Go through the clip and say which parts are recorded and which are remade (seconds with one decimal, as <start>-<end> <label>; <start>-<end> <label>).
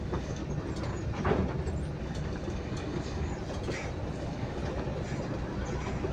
0.0-0.4 remade; 0.4-2.0 recorded; 2.0-3.3 remade; 3.3-4.1 recorded; 4.1-4.6 remade; 4.6-6.1 recorded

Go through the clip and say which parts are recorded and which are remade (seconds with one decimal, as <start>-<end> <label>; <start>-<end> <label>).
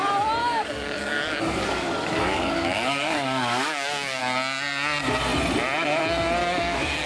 0.0-0.4 recorded; 0.4-4.2 remade; 4.2-6.4 recorded; 6.4-7.1 remade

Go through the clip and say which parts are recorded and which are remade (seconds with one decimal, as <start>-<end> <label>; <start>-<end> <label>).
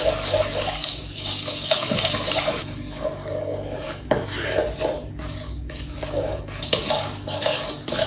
0.0-4.6 remade; 4.6-5.1 recorded; 5.1-8.1 remade